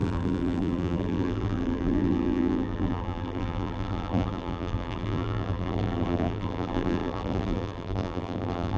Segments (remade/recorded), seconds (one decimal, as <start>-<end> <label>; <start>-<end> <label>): 0.0-8.8 remade